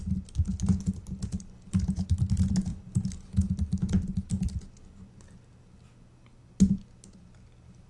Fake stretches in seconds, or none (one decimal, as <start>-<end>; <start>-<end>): 1.2-1.7; 2.7-4.7